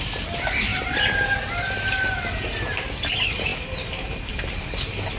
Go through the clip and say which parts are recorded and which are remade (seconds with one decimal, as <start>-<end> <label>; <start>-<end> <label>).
0.0-0.7 recorded; 0.7-2.0 remade; 2.0-5.2 recorded